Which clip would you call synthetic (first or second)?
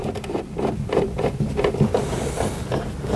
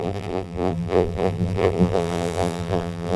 second